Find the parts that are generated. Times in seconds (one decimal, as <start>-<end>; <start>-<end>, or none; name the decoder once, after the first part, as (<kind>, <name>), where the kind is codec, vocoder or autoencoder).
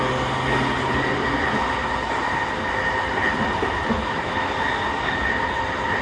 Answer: 4.0-4.5 (autoencoder, DAC-VAE)